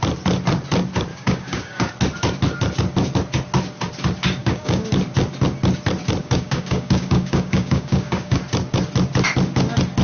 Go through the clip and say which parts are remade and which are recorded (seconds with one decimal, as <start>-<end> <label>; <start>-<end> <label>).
0.0-1.1 recorded; 1.1-1.9 remade; 1.9-4.4 recorded; 4.4-4.9 remade; 4.9-6.2 recorded; 6.2-8.4 remade; 8.4-10.0 recorded